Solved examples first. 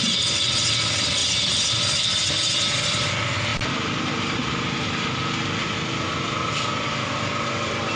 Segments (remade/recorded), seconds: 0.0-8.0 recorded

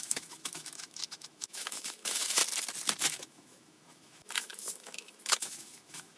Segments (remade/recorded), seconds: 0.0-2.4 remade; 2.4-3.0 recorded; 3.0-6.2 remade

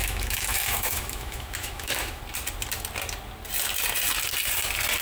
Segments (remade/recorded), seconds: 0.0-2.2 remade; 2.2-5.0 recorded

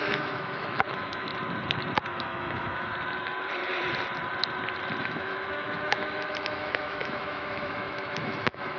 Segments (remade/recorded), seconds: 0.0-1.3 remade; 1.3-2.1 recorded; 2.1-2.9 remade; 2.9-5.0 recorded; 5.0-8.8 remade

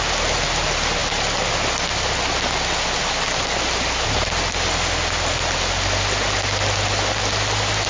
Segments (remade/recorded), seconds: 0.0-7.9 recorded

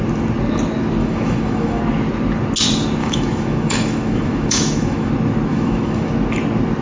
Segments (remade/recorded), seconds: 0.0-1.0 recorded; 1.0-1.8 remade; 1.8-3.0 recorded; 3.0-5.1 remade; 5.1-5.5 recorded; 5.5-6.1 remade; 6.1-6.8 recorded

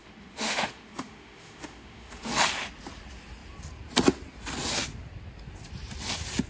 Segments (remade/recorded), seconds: 0.0-2.3 remade; 2.3-6.5 recorded

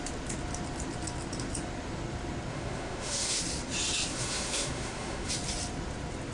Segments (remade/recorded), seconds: 0.0-2.5 recorded; 2.5-3.4 remade; 3.4-4.1 recorded; 4.1-5.3 remade; 5.3-6.3 recorded